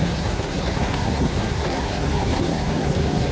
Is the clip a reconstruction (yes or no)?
yes